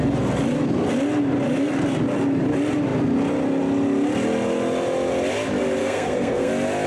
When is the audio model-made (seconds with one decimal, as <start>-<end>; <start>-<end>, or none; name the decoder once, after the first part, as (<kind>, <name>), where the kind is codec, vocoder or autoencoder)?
5.8-6.5 (codec, SNAC)